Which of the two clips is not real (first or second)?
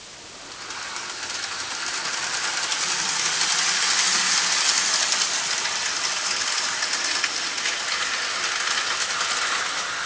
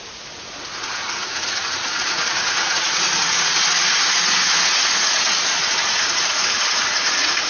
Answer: second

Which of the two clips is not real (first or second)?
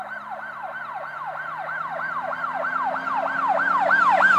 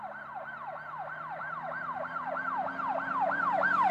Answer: second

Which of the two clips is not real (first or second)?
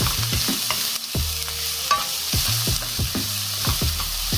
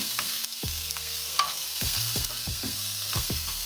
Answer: second